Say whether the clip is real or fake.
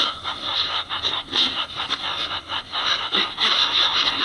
fake